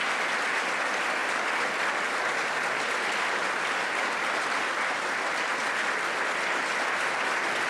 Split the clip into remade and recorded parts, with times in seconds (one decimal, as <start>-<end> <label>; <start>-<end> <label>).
0.0-7.7 recorded